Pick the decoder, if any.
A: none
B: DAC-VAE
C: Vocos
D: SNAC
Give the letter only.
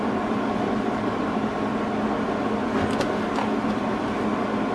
A